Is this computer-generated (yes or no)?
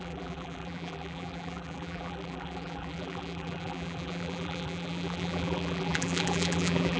yes